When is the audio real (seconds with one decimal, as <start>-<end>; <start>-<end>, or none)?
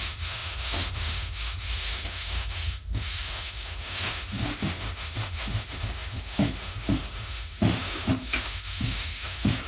none